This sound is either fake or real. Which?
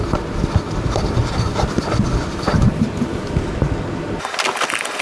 real